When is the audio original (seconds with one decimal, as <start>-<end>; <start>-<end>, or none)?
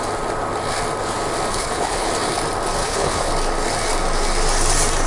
0.0-1.5; 2.1-2.8; 3.3-5.1